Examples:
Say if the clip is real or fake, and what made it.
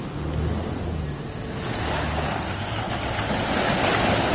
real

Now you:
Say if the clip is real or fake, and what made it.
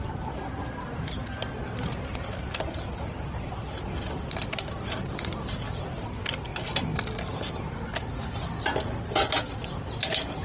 real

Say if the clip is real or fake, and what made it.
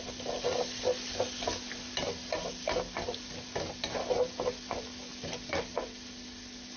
real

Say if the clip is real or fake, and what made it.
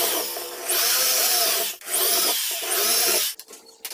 real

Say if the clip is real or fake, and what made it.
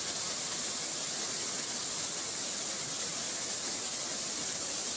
real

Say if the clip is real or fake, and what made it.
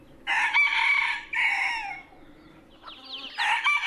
real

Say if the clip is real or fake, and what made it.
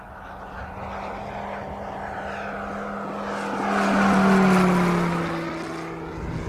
real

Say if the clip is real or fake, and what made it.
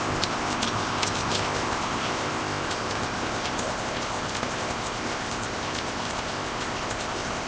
fake, codec, ZipCodec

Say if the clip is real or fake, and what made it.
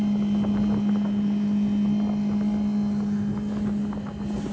real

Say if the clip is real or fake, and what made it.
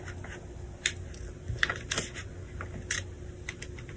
real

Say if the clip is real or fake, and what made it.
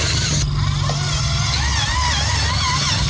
real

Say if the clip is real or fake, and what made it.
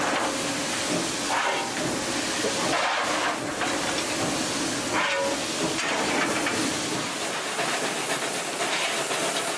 real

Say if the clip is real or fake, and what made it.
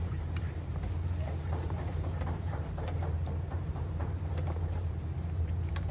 fake, vocoder, BigVGAN v2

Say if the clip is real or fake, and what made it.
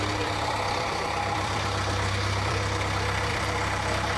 fake, vocoder, BigVGAN v2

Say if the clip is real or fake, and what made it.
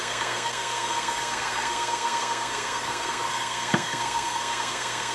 fake, codec, SNAC